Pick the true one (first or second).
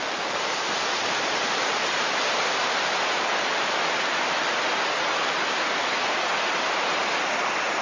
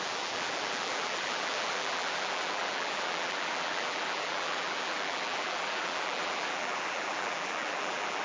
first